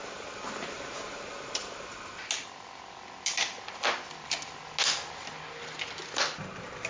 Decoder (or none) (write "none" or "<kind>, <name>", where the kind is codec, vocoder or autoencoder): none